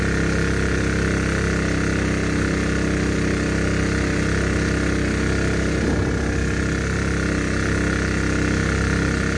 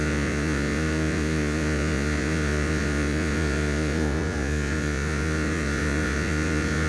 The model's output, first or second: second